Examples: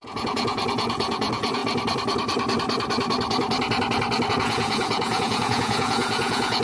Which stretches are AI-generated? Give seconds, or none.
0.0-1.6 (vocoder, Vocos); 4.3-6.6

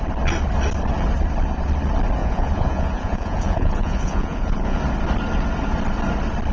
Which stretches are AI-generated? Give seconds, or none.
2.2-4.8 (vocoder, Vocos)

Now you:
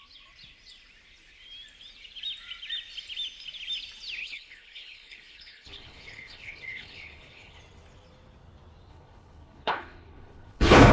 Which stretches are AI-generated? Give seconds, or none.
4.2-7.6 (codec, HILCodec); 8.9-10.9

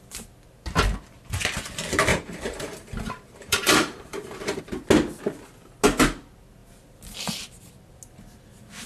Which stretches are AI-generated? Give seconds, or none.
2.1-4.6 (vocoder, BigVGAN v2)

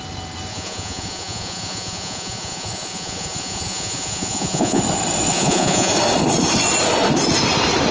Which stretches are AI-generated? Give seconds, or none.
0.5-4.8 (vocoder, Vocos); 5.3-5.9

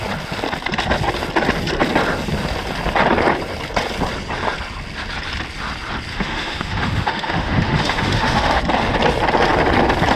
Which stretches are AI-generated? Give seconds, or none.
6.1-8.6 (autoencoder, DAC-VAE)

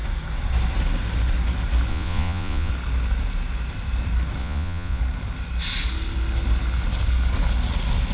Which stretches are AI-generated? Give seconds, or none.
1.9-2.7 (vocoder, Vocos); 4.4-5.0